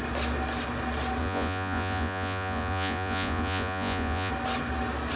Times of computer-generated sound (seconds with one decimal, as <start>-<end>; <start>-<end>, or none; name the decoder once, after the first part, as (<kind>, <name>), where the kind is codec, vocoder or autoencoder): 1.2-4.3 (vocoder, Vocos)

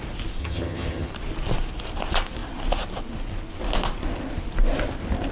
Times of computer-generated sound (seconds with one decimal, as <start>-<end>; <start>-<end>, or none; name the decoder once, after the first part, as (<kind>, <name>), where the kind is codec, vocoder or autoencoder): 0.4-1.1 (vocoder, HiFi-GAN)